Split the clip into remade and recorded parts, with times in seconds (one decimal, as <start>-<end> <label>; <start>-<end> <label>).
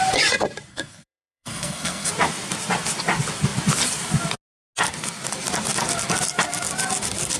0.0-0.7 recorded; 0.7-2.1 remade; 2.1-7.4 recorded